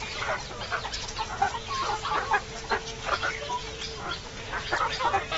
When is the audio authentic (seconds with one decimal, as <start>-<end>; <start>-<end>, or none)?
0.0-5.4